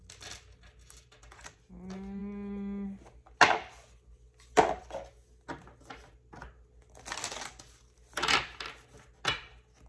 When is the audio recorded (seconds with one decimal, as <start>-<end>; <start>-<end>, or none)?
0.0-9.9